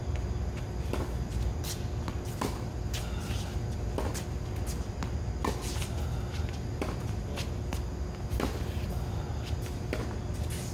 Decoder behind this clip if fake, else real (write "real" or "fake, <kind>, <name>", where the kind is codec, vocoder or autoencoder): real